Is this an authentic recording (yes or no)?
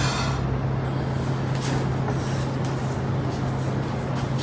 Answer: yes